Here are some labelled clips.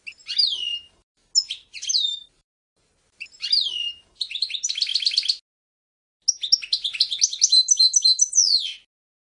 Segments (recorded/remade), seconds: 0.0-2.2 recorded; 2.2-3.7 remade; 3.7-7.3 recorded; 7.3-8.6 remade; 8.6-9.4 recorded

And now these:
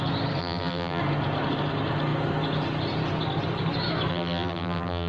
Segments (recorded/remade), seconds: 0.0-0.4 recorded; 0.4-1.0 remade; 1.0-4.1 recorded; 4.1-5.1 remade

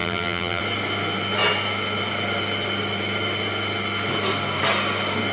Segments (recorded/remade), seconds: 0.0-0.6 remade; 0.6-5.3 recorded

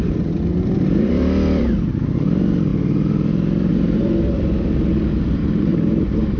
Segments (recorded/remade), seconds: 0.0-2.7 remade; 2.7-3.7 recorded; 3.7-5.7 remade; 5.7-6.4 recorded

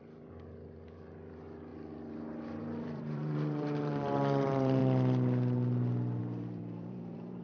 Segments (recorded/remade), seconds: 0.0-4.8 remade; 4.8-6.2 recorded; 6.2-7.4 remade

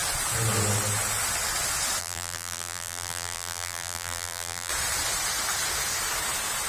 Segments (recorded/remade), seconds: 0.0-2.0 recorded; 2.0-4.7 remade; 4.7-6.7 recorded

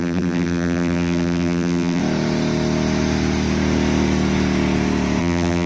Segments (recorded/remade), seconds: 0.0-2.0 remade; 2.0-5.2 recorded; 5.2-5.7 remade

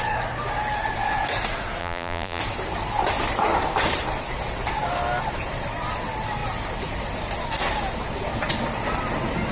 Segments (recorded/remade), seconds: 0.0-1.8 recorded; 1.8-2.4 remade; 2.4-9.5 recorded